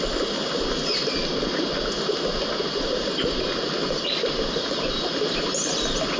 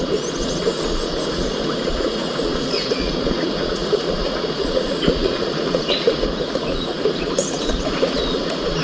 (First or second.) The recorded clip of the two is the first